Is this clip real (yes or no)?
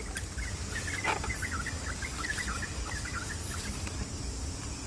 yes